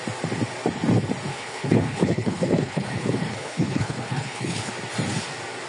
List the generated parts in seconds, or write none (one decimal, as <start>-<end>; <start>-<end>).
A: 1.3-4.7